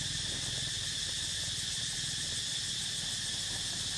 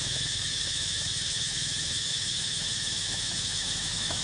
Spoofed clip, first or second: second